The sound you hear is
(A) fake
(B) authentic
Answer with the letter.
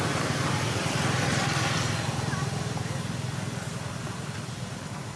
B